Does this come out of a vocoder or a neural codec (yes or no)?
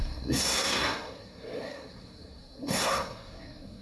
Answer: yes